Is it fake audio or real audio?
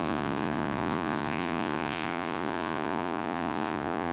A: fake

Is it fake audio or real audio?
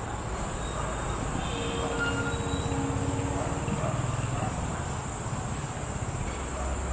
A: real